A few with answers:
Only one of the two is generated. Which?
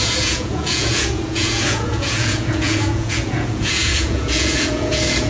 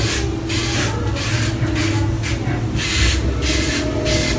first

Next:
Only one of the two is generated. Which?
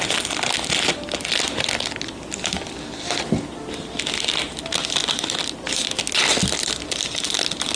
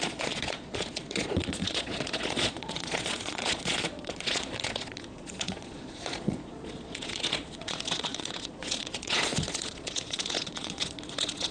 second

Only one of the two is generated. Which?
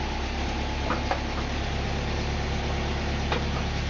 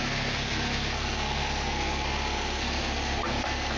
second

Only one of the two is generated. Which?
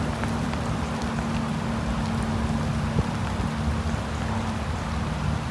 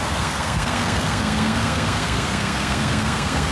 second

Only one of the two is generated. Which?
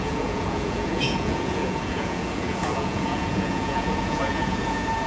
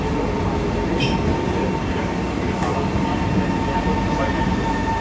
first